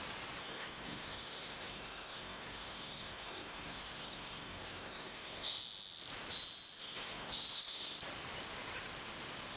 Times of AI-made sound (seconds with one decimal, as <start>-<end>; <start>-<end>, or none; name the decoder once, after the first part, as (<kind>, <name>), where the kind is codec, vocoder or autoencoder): 0.4-5.6 (codec, SNAC); 6.8-8.0